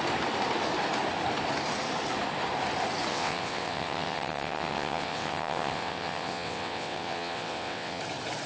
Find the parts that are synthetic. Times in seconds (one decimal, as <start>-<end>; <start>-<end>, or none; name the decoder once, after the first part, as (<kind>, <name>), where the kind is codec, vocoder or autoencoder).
3.1-8.0 (vocoder, WaveNeXt)